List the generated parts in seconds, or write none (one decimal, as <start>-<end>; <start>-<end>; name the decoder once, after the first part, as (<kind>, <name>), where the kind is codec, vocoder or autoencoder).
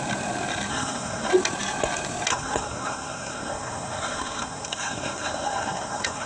0.7-1.3 (codec, SNAC); 2.3-6.3